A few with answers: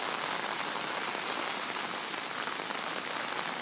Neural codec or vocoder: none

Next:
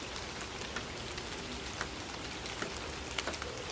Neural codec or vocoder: none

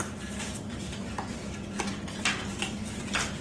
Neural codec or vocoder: none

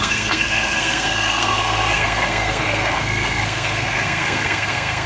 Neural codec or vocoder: codec, SNAC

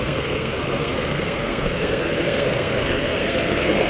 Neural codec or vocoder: codec, SNAC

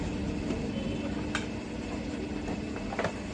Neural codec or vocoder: none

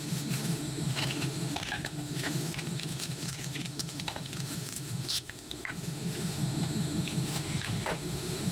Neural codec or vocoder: autoencoder, DAC-VAE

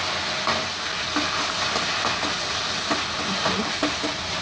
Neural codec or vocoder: none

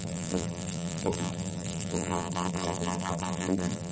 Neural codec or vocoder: vocoder, BigVGAN v2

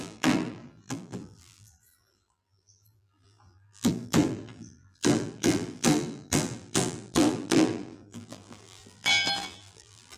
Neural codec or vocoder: vocoder, BigVGAN v2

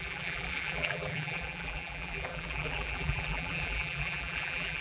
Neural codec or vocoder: vocoder, BigVGAN v2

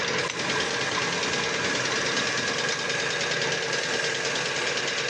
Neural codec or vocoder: none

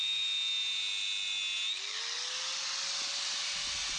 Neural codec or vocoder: none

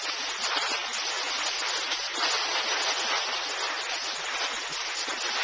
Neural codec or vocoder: none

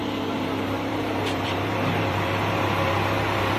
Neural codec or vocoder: vocoder, BigVGAN v2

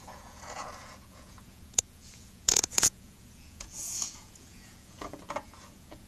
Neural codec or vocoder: vocoder, Vocos